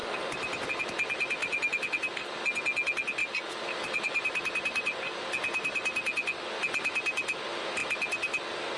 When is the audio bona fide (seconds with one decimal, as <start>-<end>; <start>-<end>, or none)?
0.7-1.4; 2.1-3.2; 5.2-8.8